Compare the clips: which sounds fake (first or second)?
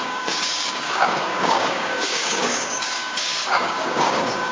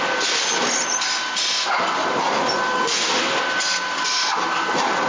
first